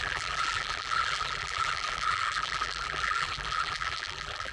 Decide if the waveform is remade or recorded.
remade